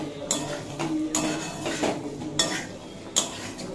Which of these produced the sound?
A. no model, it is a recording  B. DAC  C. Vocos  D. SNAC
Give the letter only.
A